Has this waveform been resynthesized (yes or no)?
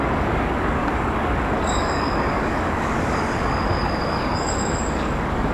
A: yes